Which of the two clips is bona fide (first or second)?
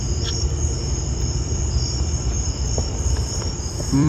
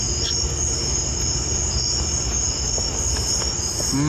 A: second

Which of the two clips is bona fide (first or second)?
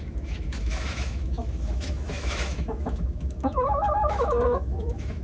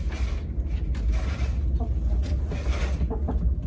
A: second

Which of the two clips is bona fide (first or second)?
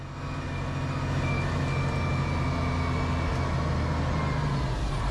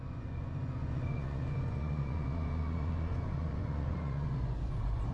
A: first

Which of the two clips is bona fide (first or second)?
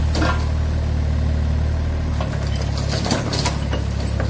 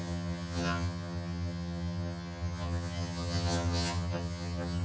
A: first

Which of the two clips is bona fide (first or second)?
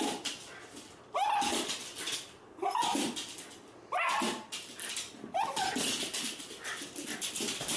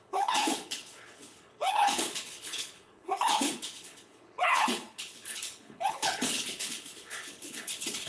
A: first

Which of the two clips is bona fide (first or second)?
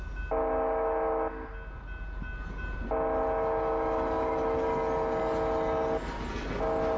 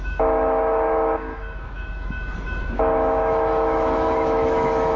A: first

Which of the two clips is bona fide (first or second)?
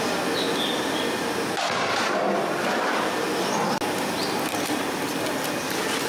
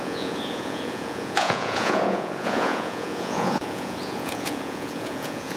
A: first